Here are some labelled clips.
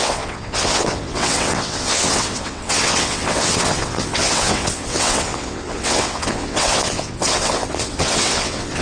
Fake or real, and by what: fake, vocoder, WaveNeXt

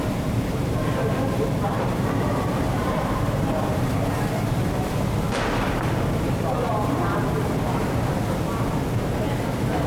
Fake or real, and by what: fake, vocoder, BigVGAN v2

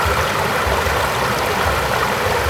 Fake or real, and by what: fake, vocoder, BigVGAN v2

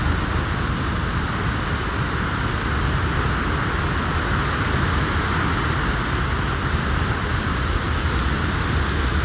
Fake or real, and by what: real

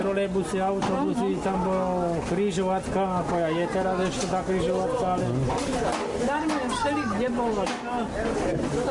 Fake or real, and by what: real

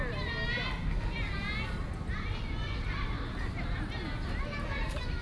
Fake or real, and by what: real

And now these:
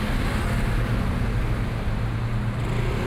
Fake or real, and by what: real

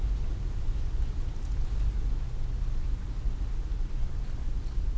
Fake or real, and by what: real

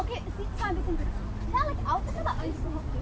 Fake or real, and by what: real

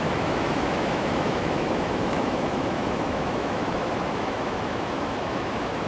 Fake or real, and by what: fake, autoencoder, DAC-VAE